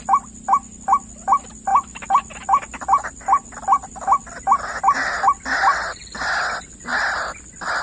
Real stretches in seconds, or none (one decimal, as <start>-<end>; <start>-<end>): 0.0-7.8